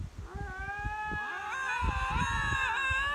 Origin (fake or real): real